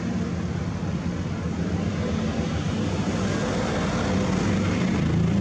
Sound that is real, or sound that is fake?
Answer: real